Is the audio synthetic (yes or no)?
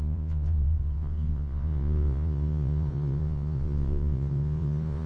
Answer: yes